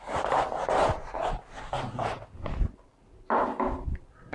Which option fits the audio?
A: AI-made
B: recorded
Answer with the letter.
B